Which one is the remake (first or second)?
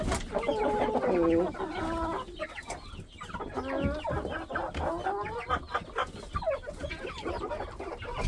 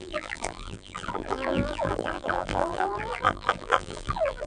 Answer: second